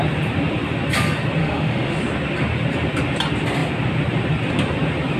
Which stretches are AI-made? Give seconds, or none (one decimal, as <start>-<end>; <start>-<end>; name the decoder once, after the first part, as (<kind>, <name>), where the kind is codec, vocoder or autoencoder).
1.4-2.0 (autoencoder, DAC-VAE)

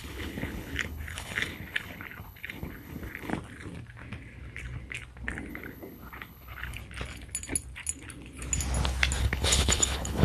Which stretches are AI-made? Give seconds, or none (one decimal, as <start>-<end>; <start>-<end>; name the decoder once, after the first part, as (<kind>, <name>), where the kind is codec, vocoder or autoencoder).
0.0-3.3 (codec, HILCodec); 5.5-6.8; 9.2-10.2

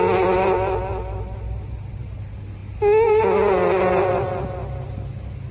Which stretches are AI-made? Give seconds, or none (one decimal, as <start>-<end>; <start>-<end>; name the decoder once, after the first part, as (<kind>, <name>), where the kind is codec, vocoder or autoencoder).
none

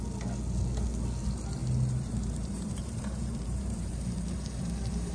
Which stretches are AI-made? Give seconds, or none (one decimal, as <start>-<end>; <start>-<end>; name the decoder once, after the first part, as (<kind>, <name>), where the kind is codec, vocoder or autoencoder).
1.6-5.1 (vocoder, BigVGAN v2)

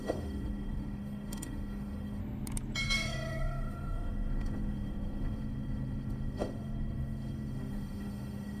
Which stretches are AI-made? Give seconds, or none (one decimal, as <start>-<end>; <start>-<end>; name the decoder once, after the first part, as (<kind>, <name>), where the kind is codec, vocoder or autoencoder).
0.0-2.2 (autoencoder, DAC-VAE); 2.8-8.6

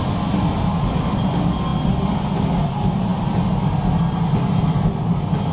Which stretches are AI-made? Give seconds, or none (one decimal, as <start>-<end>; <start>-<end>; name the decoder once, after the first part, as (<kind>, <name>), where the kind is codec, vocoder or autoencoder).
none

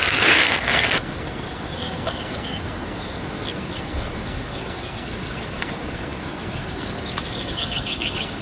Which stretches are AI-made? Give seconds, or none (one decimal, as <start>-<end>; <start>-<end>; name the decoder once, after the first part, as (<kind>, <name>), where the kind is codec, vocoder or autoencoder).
0.0-8.4 (codec, SNAC)